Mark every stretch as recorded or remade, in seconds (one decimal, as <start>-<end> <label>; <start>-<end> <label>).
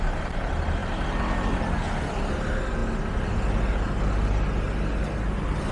0.0-5.7 recorded